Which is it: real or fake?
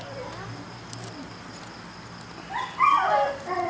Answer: real